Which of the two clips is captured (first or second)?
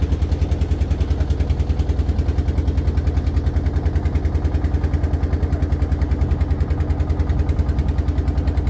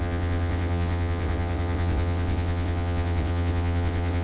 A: first